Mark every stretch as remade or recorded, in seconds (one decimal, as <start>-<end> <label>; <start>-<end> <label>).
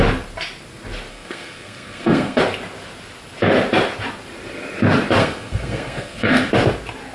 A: 0.0-1.1 recorded; 1.1-2.4 remade; 2.4-5.2 recorded; 5.2-6.5 remade; 6.5-7.1 recorded